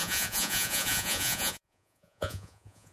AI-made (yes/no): yes